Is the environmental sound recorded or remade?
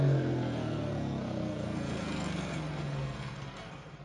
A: remade